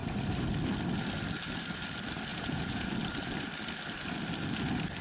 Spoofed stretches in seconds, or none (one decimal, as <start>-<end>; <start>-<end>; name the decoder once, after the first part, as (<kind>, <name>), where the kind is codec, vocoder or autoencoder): 2.3-2.9 (vocoder, Vocos)